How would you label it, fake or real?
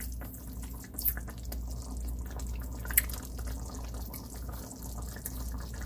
real